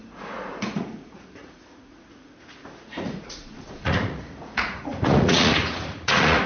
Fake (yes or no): yes